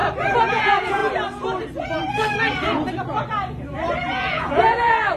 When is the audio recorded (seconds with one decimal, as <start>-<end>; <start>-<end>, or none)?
0.0-0.5; 1.0-4.1